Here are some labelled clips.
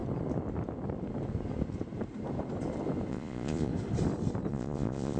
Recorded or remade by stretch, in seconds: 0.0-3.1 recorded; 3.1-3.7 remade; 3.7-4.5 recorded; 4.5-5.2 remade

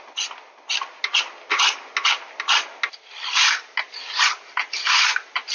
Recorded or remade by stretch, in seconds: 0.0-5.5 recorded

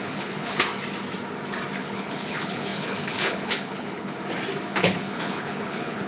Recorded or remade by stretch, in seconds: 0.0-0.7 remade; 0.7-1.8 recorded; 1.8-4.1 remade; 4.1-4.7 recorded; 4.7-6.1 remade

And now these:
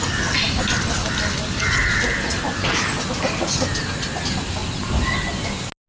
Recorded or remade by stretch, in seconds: 0.0-5.9 recorded

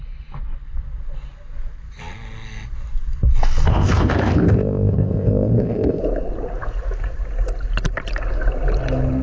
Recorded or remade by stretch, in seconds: 0.0-3.7 recorded; 3.7-6.0 remade; 6.0-9.2 recorded

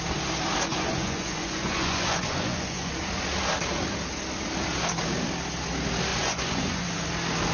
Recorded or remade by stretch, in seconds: 0.0-0.7 recorded; 0.7-2.9 remade; 2.9-6.1 recorded; 6.1-7.0 remade; 7.0-7.5 recorded

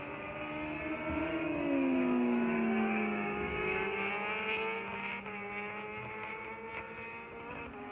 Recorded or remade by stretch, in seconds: 0.0-1.3 recorded; 1.3-4.1 remade; 4.1-7.9 recorded